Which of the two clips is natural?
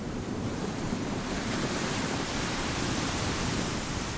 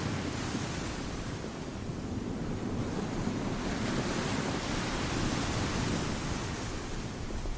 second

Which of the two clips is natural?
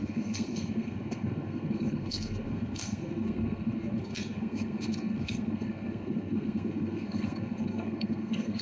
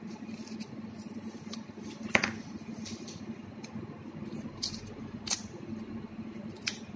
second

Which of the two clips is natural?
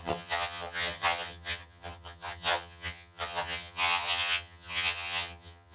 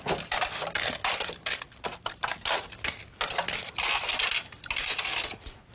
second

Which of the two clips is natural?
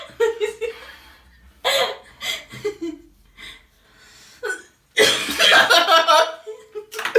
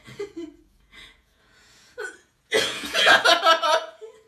first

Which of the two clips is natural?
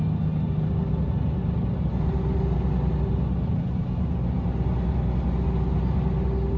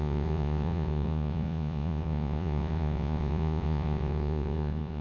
first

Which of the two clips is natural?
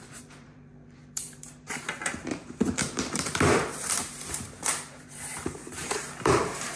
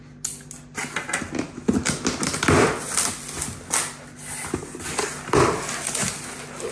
second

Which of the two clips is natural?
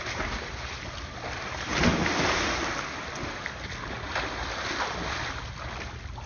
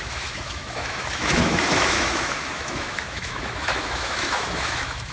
first